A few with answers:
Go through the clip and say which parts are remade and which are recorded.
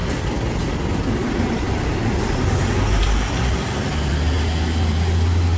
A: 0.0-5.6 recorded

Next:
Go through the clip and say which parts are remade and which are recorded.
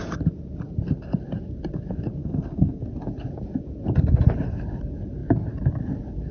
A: 0.0-2.2 recorded; 2.2-2.8 remade; 2.8-6.3 recorded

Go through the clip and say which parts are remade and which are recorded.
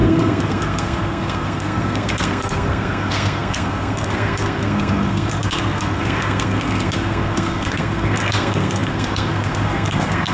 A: 0.0-10.3 remade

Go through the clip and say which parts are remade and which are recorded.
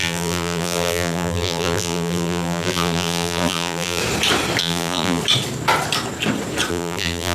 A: 0.0-4.0 remade; 4.0-4.6 recorded; 4.6-5.2 remade; 5.2-6.7 recorded; 6.7-7.3 remade